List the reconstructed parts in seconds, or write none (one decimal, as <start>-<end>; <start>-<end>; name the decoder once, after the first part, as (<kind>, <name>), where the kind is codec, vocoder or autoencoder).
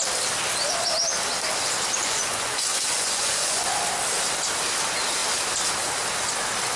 2.0-3.7 (vocoder, Vocos)